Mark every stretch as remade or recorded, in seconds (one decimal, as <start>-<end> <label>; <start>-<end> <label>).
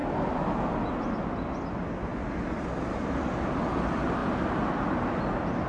0.0-5.7 recorded